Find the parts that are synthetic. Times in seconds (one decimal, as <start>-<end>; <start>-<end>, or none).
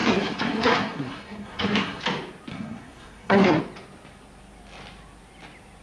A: 0.0-2.0; 2.5-3.6